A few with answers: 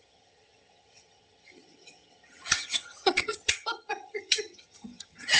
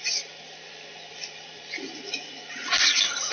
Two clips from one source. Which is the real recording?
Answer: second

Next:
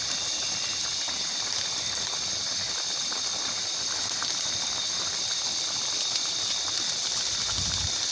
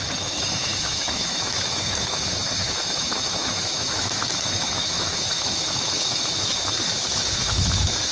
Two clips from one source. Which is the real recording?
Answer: first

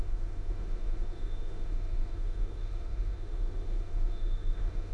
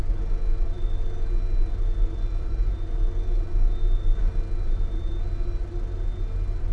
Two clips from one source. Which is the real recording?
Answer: second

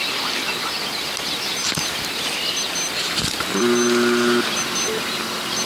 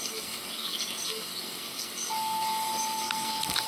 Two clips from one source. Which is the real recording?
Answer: first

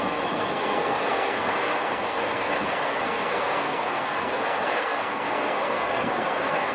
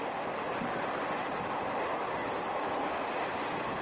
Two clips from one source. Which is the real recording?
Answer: second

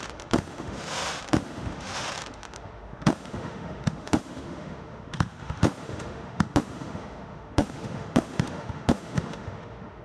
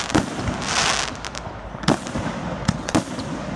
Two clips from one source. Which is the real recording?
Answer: second